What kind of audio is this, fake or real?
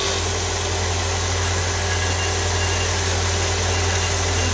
real